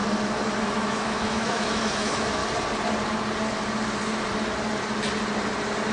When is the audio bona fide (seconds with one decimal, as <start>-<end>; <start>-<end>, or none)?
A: 0.0-0.6; 2.4-5.9